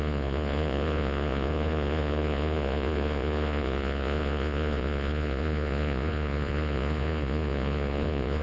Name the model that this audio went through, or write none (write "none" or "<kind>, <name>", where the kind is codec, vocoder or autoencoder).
vocoder, Vocos